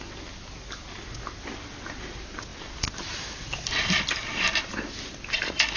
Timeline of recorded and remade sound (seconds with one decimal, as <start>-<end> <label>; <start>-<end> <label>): 0.0-5.8 recorded